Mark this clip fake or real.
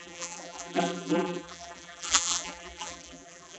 fake